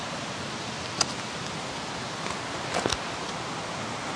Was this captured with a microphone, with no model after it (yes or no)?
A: yes